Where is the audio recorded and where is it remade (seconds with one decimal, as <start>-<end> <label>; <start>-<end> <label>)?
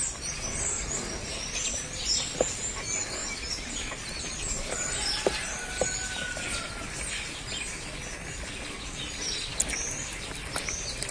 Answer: 0.0-11.1 recorded